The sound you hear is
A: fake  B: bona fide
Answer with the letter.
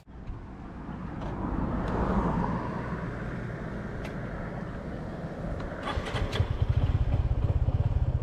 B